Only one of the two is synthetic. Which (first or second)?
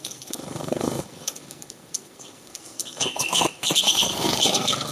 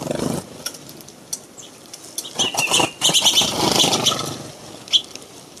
first